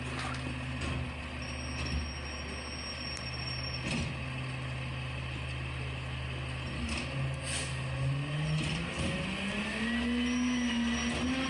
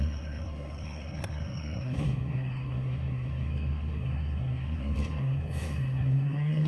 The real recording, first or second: first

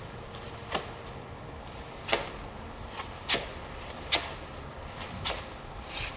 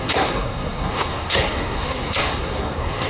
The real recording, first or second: first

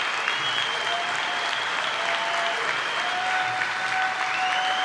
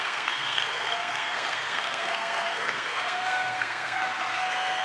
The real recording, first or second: first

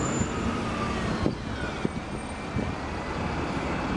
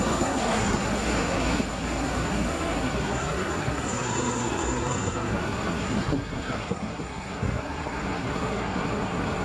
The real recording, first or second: first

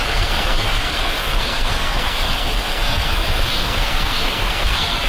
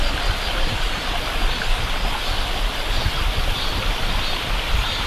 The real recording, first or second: second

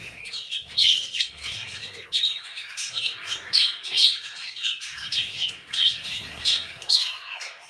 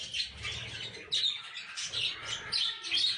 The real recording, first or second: second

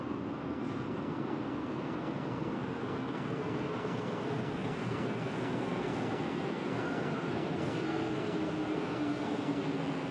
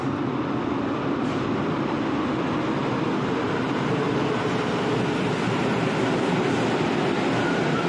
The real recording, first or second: second